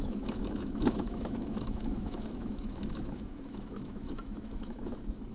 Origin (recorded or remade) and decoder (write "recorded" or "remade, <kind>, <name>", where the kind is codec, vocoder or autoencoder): remade, autoencoder, DAC-VAE